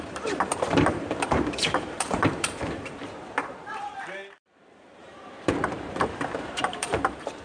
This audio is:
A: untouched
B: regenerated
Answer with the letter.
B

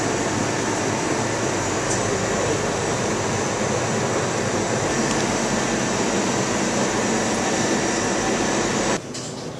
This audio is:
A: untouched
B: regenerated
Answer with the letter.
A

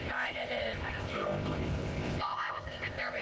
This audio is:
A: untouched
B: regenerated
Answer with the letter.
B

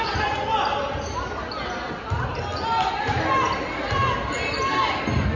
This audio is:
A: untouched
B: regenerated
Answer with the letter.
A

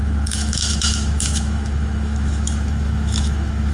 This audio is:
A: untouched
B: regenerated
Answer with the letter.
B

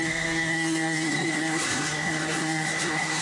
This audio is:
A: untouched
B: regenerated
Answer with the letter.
B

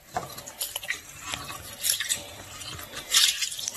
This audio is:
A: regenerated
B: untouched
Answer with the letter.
B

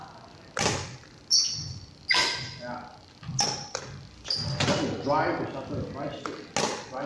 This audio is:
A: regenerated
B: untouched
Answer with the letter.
B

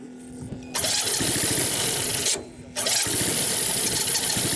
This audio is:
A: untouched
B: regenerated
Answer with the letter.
A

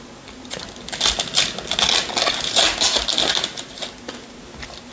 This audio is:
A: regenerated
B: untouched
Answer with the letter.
B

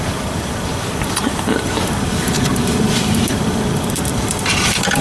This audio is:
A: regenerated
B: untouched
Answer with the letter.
A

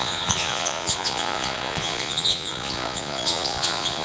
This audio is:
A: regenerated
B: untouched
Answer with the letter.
A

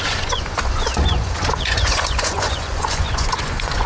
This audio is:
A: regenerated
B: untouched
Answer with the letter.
A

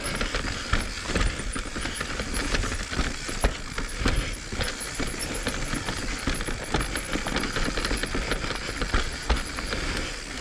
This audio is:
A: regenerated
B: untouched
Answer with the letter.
B